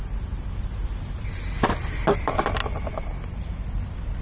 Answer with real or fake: real